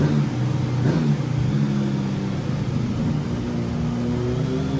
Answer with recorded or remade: recorded